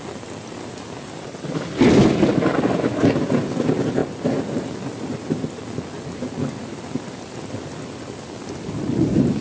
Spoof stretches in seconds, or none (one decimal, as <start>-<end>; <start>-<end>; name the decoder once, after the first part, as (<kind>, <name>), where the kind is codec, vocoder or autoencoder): none